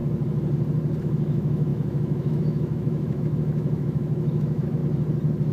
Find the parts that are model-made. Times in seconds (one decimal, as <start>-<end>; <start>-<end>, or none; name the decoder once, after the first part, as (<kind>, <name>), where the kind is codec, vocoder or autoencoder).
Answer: 1.0-4.8 (autoencoder, DAC-VAE)